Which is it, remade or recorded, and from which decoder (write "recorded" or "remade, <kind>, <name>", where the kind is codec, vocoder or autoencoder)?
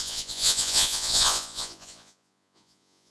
remade, vocoder, Vocos